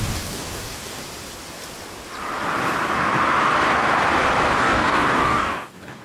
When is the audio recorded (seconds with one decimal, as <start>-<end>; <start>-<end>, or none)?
1.0-4.6